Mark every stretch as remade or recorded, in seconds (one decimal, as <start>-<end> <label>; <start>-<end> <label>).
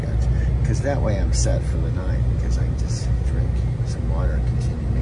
0.0-1.5 recorded; 1.5-3.4 remade; 3.4-5.0 recorded